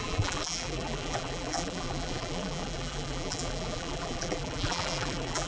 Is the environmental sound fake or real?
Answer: fake